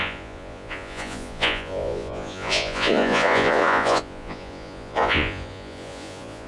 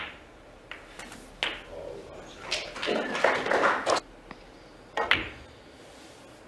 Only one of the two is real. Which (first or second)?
second